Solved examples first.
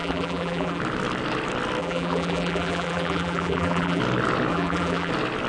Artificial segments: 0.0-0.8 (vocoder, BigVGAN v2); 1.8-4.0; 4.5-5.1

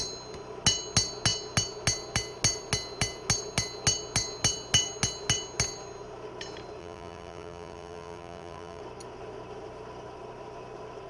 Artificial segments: 6.8-8.8 (vocoder, BigVGAN v2)

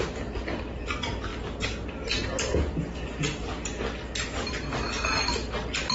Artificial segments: none

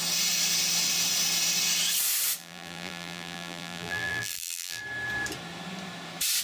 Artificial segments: 2.4-4.8 (vocoder, BigVGAN v2)

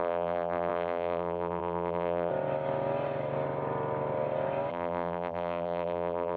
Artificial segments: 0.0-2.3 (vocoder, BigVGAN v2); 4.7-6.4

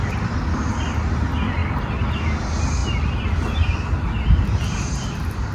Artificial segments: none

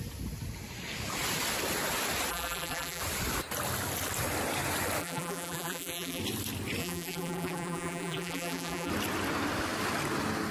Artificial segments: 2.3-3.0 (vocoder, BigVGAN v2); 5.0-6.2; 6.8-8.9

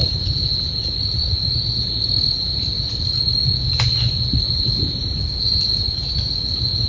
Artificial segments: none